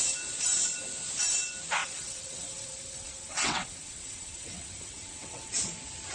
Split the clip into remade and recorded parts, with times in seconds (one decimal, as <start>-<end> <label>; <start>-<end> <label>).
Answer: 0.0-1.8 recorded; 1.8-5.5 remade; 5.5-6.1 recorded